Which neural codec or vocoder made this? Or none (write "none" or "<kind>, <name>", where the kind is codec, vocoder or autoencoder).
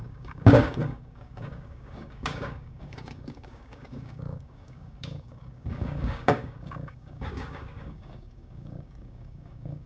codec, DAC